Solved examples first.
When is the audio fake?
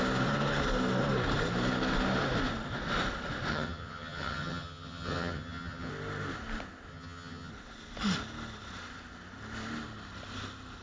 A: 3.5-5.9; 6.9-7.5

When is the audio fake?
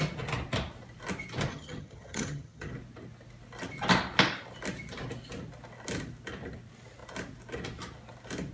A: 1.5-2.7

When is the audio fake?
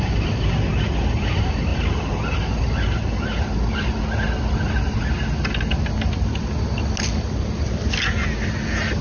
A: none